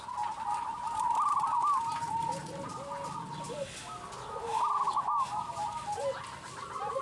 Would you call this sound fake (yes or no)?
no